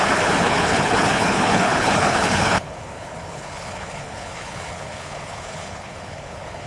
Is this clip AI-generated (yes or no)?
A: yes